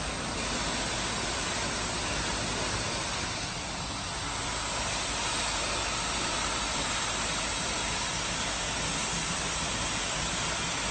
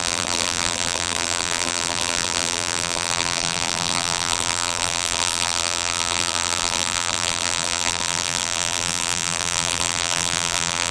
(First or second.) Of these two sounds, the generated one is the second